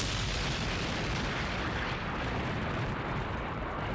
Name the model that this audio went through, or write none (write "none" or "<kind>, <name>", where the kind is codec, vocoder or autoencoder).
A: vocoder, BigVGAN v2